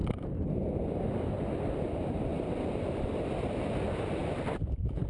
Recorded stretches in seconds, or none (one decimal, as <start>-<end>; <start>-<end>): 0.0-1.3